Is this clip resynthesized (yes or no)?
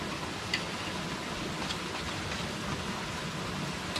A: no